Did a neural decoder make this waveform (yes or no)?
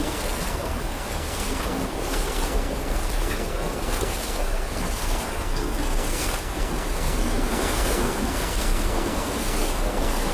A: yes